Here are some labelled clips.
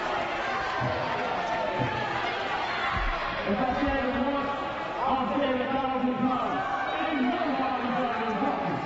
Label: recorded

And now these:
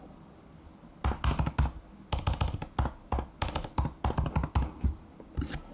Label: recorded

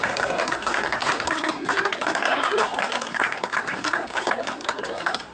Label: remade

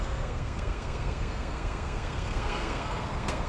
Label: remade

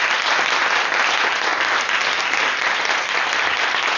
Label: recorded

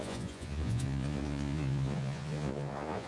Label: remade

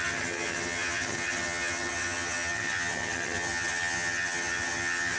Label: remade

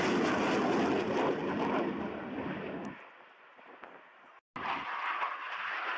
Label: recorded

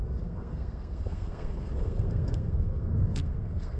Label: remade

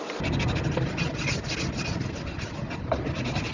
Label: recorded